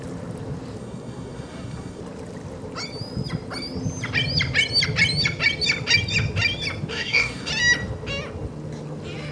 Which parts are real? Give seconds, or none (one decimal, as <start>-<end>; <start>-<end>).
0.0-0.8; 2.0-6.9; 7.5-9.3